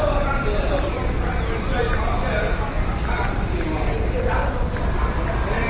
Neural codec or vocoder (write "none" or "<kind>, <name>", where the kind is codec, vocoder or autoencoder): none